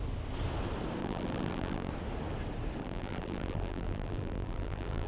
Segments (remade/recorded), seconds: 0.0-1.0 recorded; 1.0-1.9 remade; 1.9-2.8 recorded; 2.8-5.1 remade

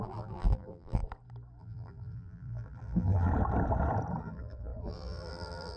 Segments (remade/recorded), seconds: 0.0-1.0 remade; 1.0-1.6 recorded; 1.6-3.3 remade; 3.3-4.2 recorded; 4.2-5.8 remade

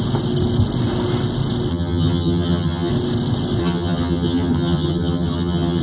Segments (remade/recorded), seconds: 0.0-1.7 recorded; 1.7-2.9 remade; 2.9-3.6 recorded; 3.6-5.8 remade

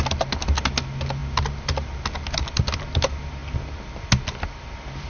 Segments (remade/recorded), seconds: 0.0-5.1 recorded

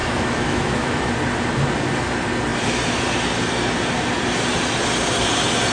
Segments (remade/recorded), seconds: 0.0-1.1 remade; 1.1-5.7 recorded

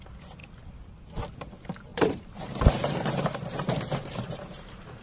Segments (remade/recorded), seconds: 0.0-1.9 recorded; 1.9-5.0 remade

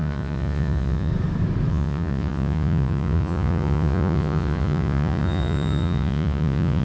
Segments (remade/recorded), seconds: 0.0-1.1 remade; 1.1-1.7 recorded; 1.7-6.8 remade